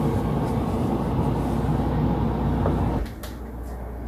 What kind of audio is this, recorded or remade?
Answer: recorded